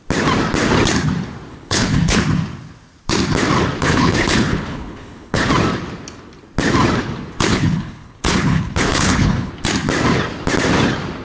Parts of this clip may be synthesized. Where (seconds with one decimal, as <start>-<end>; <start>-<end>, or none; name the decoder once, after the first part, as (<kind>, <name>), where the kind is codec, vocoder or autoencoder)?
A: 1.5-2.2 (codec, HILCodec); 3.8-5.5; 7.5-9.5